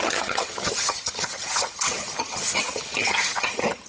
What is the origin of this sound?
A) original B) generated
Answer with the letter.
B